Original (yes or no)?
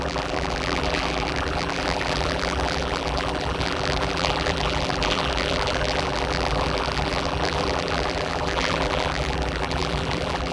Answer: no